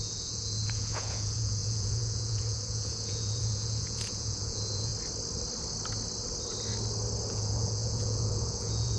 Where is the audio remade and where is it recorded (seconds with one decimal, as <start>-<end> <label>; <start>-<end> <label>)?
0.0-4.9 remade; 4.9-7.3 recorded; 7.3-9.0 remade